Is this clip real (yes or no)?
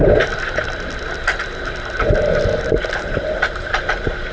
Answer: yes